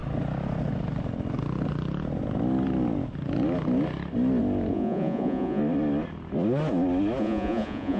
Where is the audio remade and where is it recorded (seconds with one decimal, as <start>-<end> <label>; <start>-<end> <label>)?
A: 0.0-4.7 recorded; 4.7-5.6 remade; 5.6-7.2 recorded; 7.2-8.0 remade